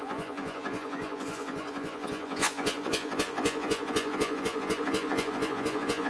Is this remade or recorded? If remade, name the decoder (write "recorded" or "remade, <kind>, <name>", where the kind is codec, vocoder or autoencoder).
remade, vocoder, Vocos